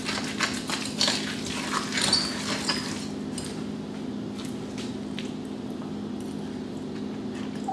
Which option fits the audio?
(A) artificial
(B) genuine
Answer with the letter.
B